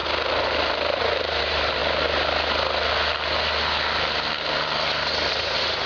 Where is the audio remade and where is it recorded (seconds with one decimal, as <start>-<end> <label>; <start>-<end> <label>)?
0.0-1.0 recorded; 1.0-1.8 remade; 1.8-5.3 recorded; 5.3-5.9 remade